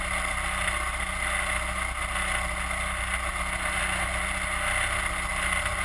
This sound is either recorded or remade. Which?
recorded